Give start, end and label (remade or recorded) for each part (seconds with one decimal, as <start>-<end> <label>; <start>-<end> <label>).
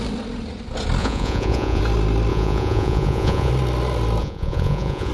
0.0-1.0 recorded; 1.0-1.8 remade; 1.8-2.3 recorded; 2.3-3.5 remade; 3.5-4.2 recorded; 4.2-5.1 remade